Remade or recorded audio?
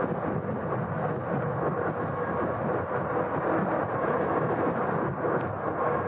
recorded